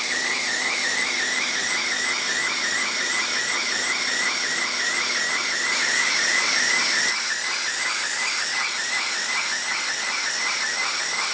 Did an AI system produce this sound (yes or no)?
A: no